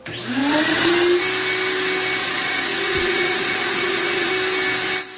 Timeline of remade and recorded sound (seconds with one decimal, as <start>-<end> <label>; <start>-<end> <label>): 0.0-0.4 recorded; 0.4-0.9 remade; 0.9-2.2 recorded; 2.2-4.3 remade; 4.3-5.2 recorded